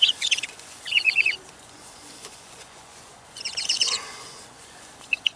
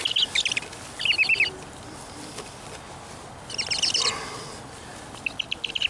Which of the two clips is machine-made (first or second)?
first